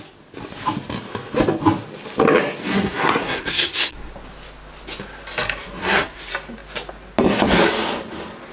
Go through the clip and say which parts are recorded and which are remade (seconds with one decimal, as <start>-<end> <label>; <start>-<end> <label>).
0.0-2.6 recorded; 2.6-4.1 remade; 4.1-5.8 recorded; 5.8-6.3 remade; 6.3-8.5 recorded